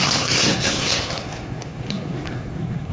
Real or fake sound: fake